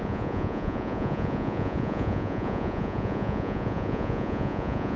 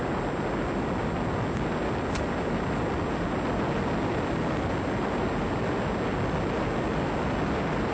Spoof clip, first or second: first